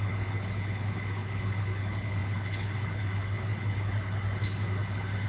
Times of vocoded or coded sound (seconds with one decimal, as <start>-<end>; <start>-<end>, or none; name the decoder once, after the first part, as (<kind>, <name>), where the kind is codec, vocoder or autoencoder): 0.0-5.3 (codec, HILCodec)

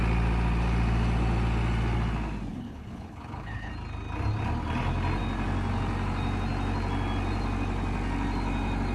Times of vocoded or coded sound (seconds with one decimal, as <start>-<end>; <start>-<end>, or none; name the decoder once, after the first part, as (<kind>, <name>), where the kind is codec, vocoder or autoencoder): 2.5-3.7 (codec, HILCodec)

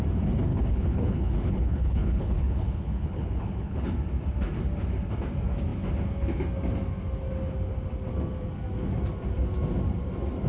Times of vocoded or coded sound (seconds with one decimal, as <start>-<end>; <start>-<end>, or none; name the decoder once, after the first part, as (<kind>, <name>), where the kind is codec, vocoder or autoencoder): 0.5-3.8 (codec, HILCodec)